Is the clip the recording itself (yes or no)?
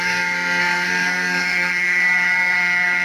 no